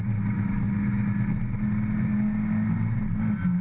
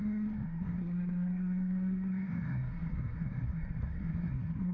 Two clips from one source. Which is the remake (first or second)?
second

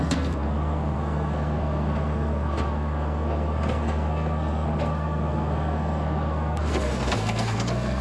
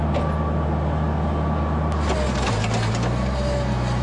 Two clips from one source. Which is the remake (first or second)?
first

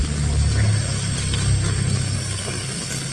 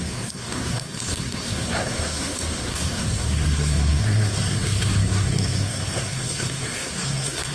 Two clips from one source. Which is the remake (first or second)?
second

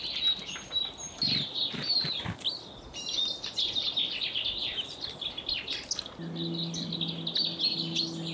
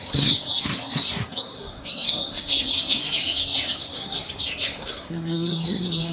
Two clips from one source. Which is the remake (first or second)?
second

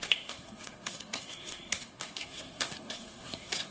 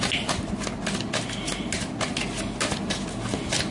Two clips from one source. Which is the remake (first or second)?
first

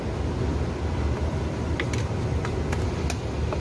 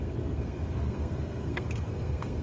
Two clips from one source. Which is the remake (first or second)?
second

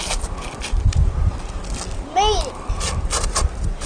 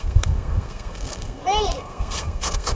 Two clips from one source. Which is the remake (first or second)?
second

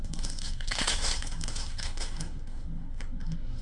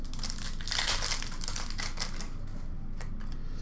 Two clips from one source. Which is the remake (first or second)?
first